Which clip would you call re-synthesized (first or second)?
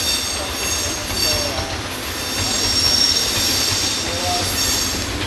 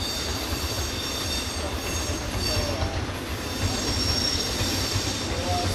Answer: second